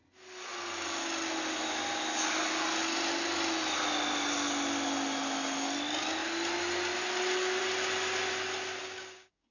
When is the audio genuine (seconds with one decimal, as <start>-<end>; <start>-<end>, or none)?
0.0-8.8